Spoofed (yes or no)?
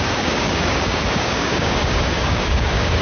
yes